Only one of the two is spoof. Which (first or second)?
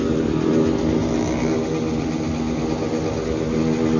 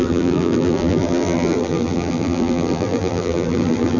second